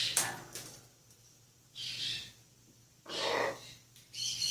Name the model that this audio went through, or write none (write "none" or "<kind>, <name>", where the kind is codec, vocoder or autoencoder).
none